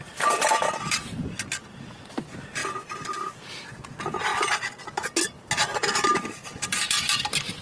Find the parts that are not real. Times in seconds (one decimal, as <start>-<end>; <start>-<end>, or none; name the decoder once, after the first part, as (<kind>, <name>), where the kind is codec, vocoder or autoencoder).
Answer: none